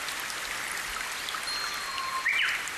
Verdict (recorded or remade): recorded